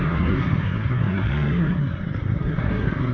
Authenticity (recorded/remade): remade